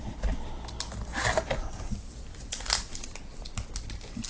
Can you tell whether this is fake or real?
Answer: real